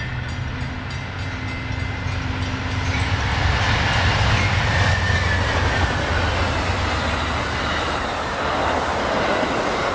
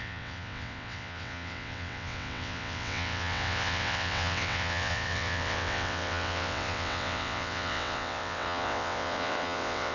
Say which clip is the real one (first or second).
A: first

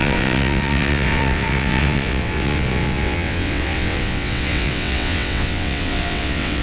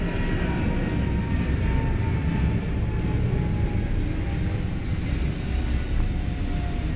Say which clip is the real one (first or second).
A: second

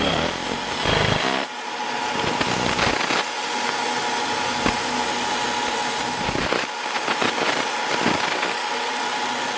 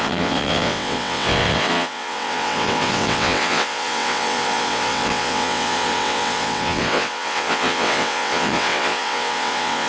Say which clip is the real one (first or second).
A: first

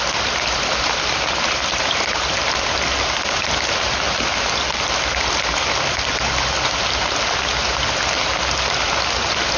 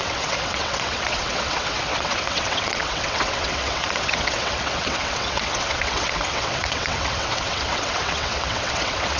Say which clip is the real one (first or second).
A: first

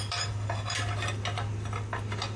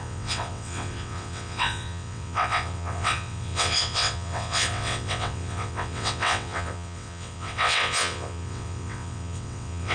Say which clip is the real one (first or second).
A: first